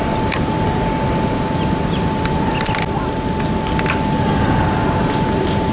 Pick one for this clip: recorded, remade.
recorded